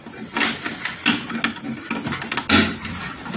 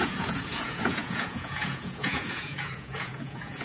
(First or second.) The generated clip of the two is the second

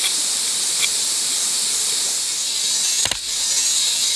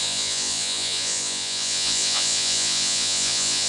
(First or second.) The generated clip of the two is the second